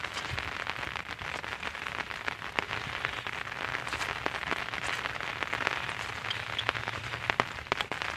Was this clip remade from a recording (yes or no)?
no